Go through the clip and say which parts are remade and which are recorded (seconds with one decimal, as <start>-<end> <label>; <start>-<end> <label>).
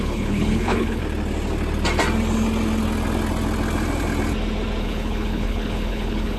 0.0-1.0 remade; 1.0-4.8 recorded; 4.8-6.4 remade